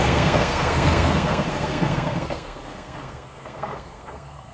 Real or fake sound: fake